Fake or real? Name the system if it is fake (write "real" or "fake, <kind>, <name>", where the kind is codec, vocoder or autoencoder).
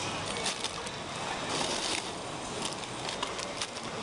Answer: real